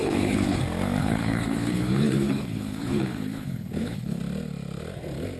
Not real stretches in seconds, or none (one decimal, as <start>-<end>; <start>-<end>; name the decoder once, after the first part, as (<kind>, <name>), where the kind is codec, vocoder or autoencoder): 0.0-0.6 (codec, HILCodec); 1.0-4.2